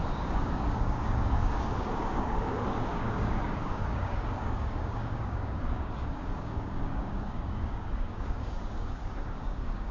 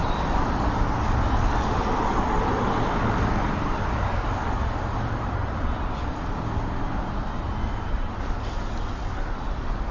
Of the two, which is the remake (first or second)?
first